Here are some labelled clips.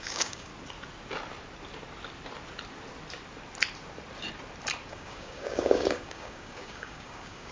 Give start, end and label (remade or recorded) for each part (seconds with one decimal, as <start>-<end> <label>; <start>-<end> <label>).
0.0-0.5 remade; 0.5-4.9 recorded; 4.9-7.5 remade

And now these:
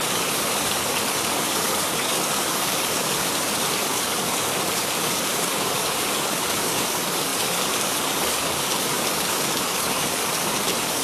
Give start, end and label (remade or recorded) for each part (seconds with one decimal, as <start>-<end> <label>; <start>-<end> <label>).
0.0-11.0 remade

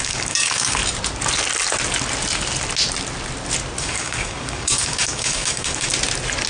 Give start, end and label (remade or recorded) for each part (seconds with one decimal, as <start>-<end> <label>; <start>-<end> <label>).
0.0-0.8 remade; 0.8-3.8 recorded; 3.8-5.9 remade; 5.9-6.5 recorded